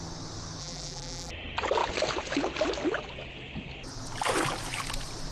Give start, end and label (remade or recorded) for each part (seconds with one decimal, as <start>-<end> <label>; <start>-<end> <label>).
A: 0.0-0.6 recorded; 0.6-1.3 remade; 1.3-5.3 recorded

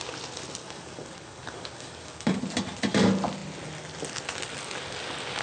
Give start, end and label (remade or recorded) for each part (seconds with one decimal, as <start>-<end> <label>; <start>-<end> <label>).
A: 0.0-0.6 recorded; 0.6-2.4 remade; 2.4-5.4 recorded

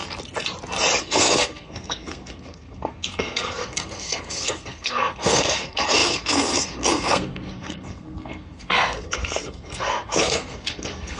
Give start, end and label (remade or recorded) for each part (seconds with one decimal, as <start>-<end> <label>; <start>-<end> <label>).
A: 0.0-1.0 recorded; 1.0-11.2 remade